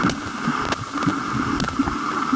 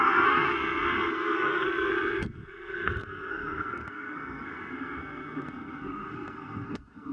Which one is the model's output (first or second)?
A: second